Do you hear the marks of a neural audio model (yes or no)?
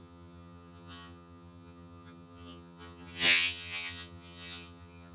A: yes